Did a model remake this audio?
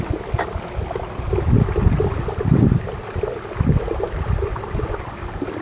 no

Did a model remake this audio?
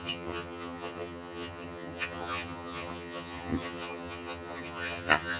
yes